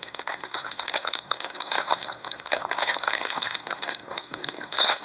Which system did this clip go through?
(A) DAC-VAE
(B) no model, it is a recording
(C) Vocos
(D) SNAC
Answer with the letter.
D